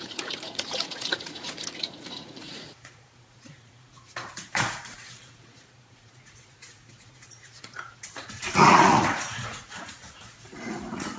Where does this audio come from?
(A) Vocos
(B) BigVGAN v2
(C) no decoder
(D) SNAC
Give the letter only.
A